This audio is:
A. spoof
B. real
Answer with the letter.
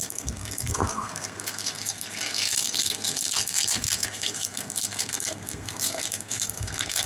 A